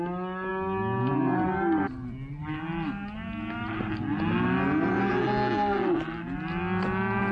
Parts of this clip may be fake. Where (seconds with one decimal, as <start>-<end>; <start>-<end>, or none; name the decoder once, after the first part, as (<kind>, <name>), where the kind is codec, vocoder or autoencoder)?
none

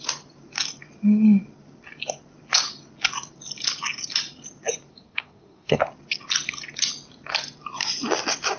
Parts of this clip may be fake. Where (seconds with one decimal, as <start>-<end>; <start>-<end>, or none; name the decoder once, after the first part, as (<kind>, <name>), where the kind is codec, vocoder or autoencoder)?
4.9-5.8 (codec, SNAC)